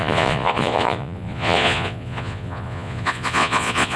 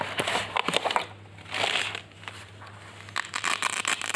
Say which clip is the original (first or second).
second